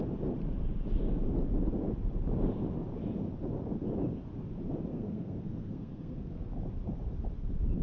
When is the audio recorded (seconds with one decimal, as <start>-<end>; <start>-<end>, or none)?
0.0-4.9; 6.5-7.8